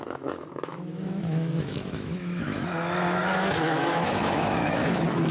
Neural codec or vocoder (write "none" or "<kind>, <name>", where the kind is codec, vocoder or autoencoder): autoencoder, DAC-VAE